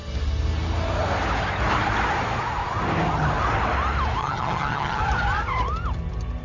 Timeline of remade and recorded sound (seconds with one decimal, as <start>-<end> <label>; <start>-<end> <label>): 0.0-4.2 recorded; 4.2-5.0 remade; 5.0-6.4 recorded